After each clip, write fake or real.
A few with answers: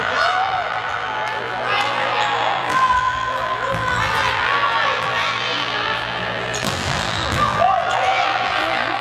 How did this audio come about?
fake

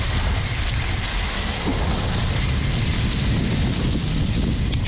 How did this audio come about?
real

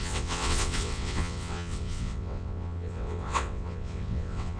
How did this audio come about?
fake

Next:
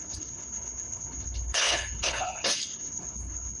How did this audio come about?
fake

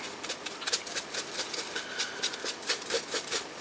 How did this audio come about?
fake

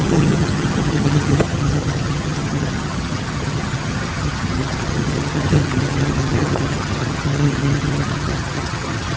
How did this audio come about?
fake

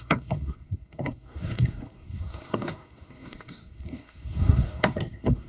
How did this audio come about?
fake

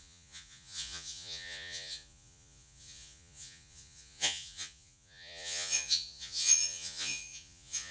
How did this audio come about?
fake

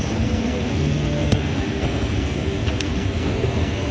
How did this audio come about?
fake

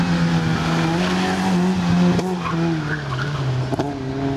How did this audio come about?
real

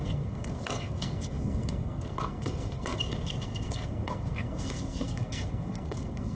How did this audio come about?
fake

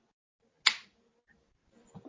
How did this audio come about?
real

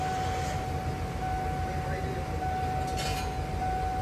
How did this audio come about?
real